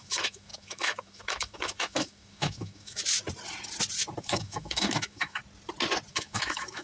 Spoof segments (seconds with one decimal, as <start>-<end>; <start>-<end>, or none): 0.0-3.0; 4.2-5.4; 6.1-6.8